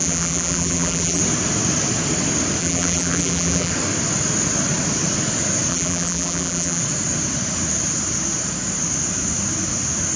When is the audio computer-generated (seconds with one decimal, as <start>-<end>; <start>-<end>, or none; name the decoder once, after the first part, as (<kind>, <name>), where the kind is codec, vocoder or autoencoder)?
0.0-1.2 (vocoder, BigVGAN v2); 2.6-3.7; 5.7-6.8